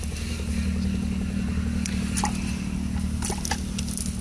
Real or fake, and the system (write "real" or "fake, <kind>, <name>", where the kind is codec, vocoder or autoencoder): real